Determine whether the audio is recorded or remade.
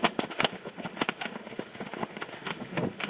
remade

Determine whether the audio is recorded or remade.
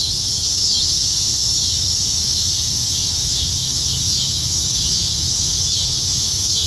remade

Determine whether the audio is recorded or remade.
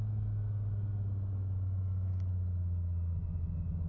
recorded